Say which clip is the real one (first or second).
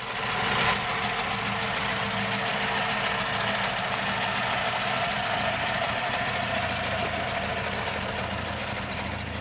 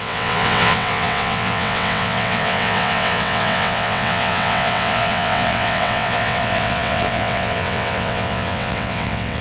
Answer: first